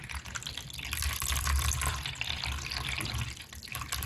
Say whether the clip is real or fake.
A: real